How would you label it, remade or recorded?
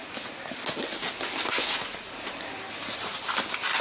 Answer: recorded